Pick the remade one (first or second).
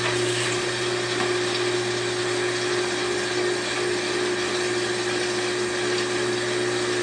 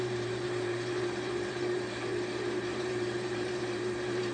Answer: second